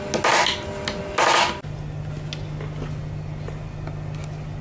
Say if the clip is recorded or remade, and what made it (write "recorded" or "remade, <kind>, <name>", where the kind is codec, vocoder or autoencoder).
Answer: recorded